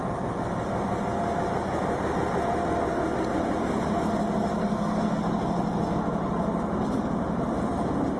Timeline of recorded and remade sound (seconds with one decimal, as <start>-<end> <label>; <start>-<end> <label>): 0.0-4.6 recorded; 4.6-5.2 remade; 5.2-8.2 recorded